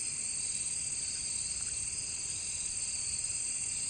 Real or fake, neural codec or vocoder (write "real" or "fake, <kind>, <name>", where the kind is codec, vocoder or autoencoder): real